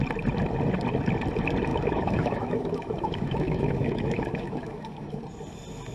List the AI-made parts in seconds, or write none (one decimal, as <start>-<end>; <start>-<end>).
1.7-5.2